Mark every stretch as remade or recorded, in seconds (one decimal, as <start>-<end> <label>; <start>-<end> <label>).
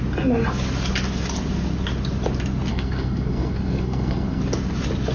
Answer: 0.0-2.7 recorded; 2.7-4.4 remade; 4.4-5.1 recorded